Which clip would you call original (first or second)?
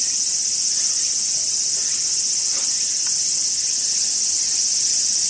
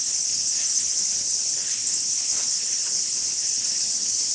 first